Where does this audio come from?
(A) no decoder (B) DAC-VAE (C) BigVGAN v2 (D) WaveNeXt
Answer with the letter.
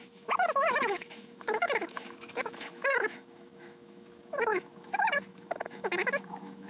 B